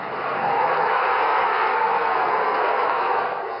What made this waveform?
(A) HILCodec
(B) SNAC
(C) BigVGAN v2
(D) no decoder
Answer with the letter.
B